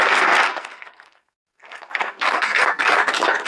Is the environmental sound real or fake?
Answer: fake